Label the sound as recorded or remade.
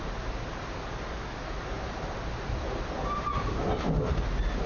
recorded